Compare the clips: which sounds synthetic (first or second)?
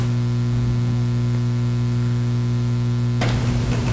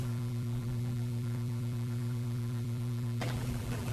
second